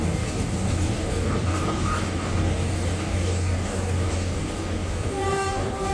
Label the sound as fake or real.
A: fake